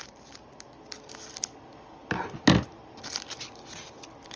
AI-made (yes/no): no